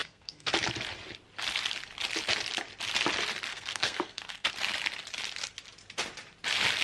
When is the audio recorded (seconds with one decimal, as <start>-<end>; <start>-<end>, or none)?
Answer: 0.5-3.5; 4.5-6.8